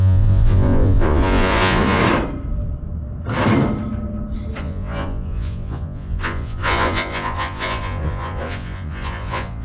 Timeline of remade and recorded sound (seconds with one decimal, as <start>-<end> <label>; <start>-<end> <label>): 0.0-2.0 remade; 2.0-4.6 recorded; 4.6-9.6 remade